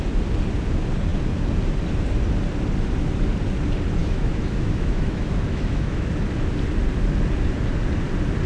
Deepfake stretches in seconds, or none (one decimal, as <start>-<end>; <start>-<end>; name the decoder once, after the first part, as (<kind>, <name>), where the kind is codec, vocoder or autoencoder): 4.0-6.1 (autoencoder, DAC-VAE)